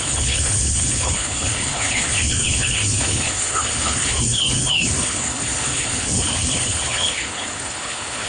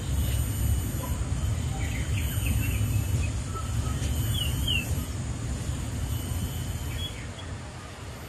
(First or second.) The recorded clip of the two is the second